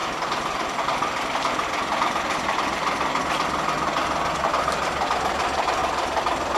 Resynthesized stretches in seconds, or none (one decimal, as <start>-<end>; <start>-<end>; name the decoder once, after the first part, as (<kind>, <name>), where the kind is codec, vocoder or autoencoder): 0.0-3.2 (vocoder, BigVGAN v2); 5.8-6.6